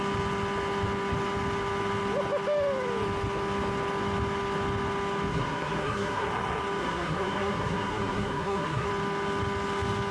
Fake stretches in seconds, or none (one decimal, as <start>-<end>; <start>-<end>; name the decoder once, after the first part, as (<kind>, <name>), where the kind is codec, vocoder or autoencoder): 5.3-6.3 (codec, SNAC); 6.8-8.9